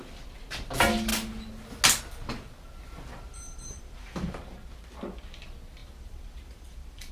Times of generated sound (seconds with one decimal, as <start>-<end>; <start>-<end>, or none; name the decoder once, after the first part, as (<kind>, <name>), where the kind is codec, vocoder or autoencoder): 3.3-4.4 (vocoder, BigVGAN v2); 5.8-7.1